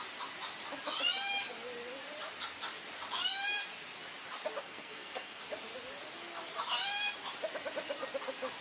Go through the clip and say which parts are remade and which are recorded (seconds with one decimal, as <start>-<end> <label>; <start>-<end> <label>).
0.0-4.6 recorded; 4.6-5.4 remade; 5.4-8.6 recorded